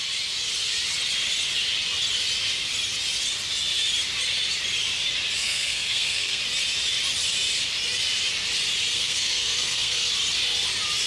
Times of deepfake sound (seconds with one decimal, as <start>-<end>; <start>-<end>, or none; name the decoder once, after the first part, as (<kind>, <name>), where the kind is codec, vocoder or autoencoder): 5.4-6.4 (codec, SNAC); 8.9-10.1